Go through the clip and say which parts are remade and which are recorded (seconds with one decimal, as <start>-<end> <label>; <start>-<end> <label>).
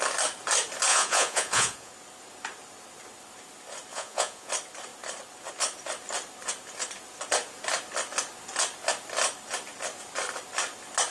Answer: 0.0-0.9 recorded; 0.9-1.9 remade; 1.9-3.9 recorded; 3.9-4.5 remade; 4.5-11.1 recorded